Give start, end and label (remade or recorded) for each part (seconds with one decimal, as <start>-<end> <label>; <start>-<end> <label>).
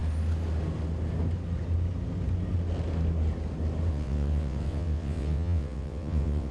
0.0-3.9 recorded; 3.9-6.5 remade